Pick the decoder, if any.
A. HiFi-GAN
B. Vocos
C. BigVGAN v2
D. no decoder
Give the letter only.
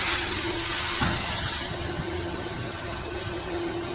A